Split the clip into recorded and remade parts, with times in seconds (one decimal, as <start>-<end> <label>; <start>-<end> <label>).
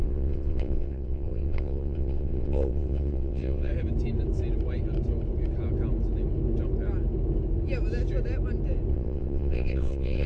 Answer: 0.0-3.7 remade; 3.7-8.9 recorded; 8.9-10.3 remade